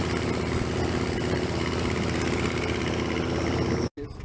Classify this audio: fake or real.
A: real